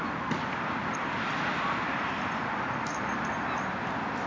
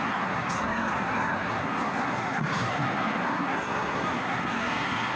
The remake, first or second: second